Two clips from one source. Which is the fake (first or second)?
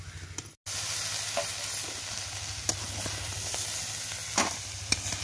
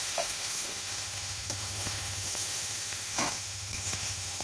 second